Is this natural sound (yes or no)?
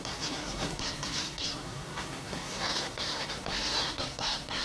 no